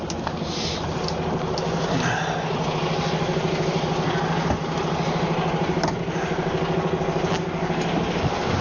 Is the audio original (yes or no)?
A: yes